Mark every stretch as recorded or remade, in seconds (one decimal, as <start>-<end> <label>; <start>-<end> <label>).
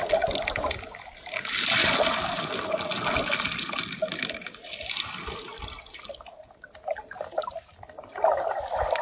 0.0-9.0 recorded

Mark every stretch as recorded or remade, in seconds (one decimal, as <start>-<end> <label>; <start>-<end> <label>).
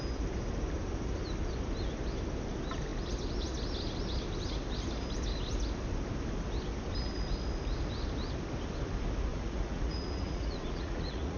0.0-9.3 recorded; 9.3-11.4 remade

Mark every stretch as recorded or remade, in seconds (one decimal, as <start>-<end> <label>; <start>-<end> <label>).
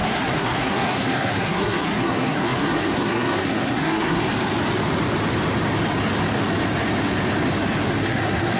0.0-4.2 remade; 4.2-8.0 recorded; 8.0-8.6 remade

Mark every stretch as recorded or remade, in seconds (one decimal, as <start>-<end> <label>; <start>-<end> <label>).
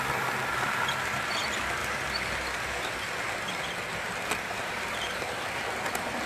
0.0-6.3 recorded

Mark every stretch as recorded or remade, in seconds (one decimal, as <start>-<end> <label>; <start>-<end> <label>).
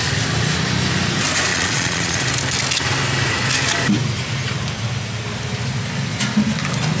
0.0-1.5 recorded; 1.5-2.2 remade; 2.2-7.0 recorded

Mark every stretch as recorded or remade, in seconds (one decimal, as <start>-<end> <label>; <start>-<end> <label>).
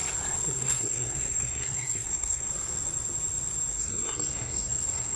0.0-0.6 recorded; 0.6-2.5 remade; 2.5-3.7 recorded; 3.7-5.2 remade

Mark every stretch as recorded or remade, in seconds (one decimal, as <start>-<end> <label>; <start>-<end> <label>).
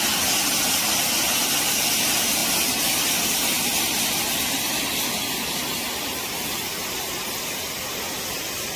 0.0-0.4 recorded; 0.4-1.0 remade; 1.0-8.8 recorded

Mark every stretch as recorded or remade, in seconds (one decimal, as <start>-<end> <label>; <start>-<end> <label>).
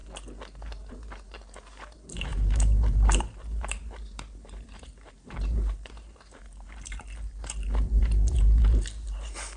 0.0-0.9 recorded; 0.9-9.6 remade